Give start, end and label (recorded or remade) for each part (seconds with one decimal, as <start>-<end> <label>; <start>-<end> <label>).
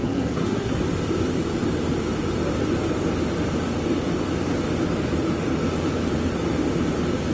0.0-0.8 remade; 0.8-7.3 recorded